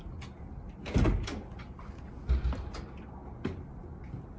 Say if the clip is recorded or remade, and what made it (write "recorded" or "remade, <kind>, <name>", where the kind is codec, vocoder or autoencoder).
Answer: recorded